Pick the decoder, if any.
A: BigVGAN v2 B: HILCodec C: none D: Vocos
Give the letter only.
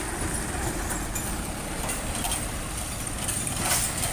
C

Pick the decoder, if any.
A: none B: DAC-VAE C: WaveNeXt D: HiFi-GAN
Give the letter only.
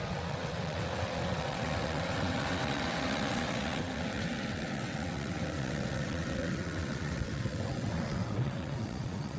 C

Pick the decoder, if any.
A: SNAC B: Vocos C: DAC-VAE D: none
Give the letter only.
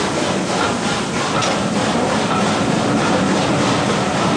D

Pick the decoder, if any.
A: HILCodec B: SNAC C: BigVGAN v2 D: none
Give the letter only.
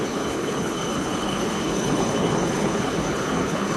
A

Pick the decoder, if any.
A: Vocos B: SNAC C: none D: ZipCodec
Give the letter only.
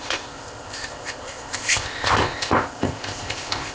D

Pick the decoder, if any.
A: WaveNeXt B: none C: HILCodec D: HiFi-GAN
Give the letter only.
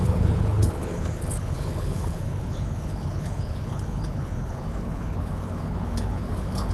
C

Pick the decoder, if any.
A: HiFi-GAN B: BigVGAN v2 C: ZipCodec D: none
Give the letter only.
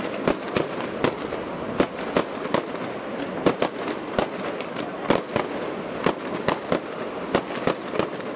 D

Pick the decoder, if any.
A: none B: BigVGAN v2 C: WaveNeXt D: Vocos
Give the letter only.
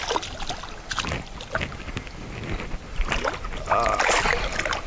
A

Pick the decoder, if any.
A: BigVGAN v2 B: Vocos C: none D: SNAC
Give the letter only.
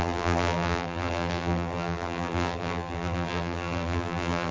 A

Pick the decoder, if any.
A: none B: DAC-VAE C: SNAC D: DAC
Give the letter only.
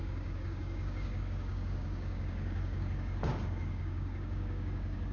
D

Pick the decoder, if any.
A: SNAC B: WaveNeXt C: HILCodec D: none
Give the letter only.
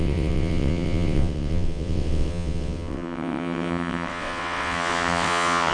B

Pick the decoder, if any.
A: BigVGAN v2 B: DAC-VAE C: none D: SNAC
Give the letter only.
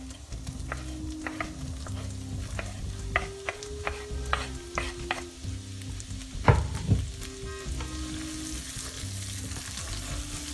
C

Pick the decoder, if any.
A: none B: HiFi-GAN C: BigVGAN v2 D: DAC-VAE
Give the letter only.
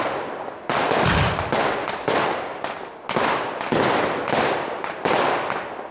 A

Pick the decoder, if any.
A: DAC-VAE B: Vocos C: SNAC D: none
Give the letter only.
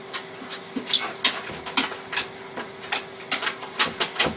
D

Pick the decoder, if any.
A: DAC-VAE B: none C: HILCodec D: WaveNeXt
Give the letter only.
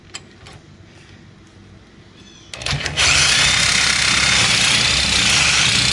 B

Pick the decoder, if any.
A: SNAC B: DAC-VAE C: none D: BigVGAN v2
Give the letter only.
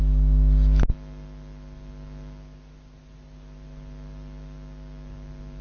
C